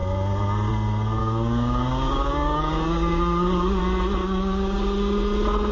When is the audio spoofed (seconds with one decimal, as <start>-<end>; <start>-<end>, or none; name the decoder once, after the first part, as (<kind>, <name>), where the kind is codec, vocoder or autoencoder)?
1.2-3.8 (codec, DAC); 4.2-4.8